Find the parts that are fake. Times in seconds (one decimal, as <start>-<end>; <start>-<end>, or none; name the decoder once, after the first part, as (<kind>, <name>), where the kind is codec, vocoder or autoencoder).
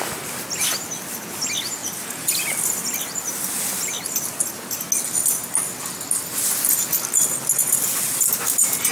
none